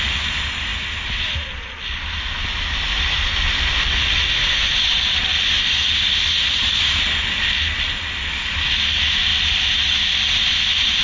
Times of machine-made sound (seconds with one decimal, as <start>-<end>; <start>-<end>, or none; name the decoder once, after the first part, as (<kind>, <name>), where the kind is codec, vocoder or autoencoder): none